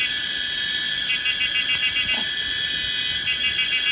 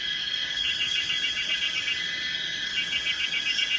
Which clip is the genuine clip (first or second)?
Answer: first